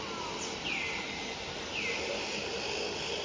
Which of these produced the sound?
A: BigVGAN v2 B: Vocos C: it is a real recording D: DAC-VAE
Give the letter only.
C